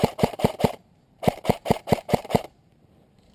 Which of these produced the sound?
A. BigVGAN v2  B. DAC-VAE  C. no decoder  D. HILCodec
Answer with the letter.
A